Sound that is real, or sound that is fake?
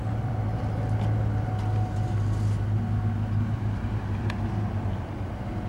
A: real